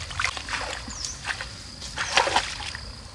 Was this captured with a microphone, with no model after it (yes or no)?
yes